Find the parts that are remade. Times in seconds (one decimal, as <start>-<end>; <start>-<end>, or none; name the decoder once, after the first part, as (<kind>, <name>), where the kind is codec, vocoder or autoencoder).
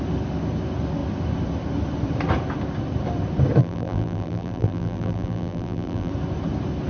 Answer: 3.6-6.1 (vocoder, BigVGAN v2)